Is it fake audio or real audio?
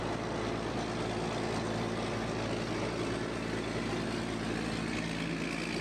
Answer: real